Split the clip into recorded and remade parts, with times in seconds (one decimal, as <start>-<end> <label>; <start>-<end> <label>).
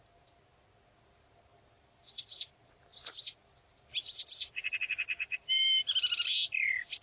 0.0-1.5 recorded; 1.5-2.5 remade; 2.5-2.9 recorded; 2.9-6.3 remade; 6.3-7.0 recorded